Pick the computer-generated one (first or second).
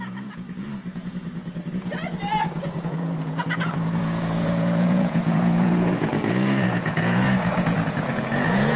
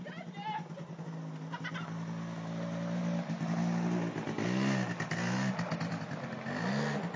first